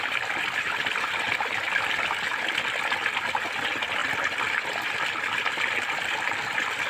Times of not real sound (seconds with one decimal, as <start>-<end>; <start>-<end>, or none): none